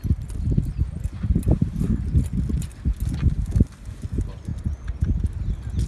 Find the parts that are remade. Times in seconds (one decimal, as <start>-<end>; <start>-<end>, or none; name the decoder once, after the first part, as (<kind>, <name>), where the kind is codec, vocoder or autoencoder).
none